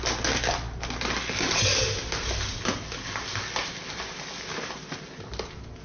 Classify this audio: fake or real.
real